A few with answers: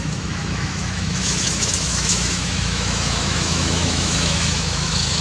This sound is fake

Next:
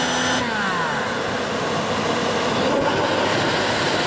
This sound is real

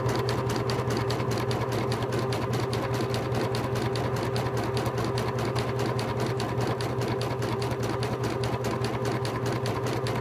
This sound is real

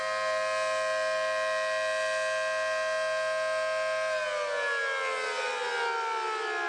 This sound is real